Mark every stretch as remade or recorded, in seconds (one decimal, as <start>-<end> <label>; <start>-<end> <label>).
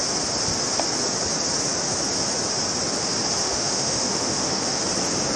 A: 0.0-3.4 recorded; 3.4-4.8 remade; 4.8-5.4 recorded